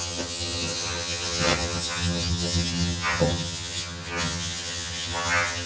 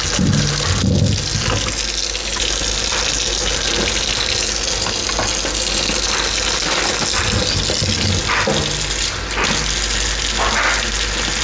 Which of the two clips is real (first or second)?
second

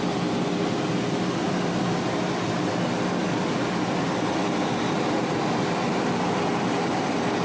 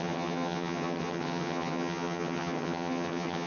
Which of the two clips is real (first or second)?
first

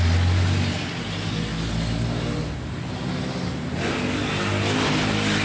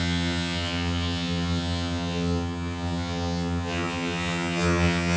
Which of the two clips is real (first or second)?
first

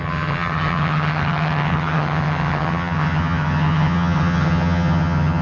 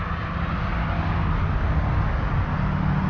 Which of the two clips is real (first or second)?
second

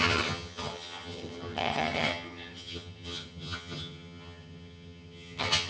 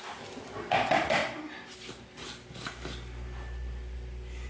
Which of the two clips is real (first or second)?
second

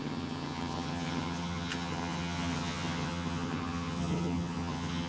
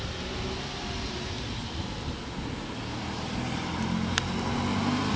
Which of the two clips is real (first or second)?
second